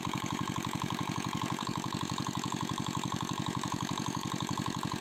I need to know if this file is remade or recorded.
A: remade